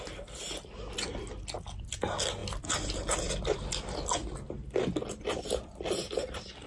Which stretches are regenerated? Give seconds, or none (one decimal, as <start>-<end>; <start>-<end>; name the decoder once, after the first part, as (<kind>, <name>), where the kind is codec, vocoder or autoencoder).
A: none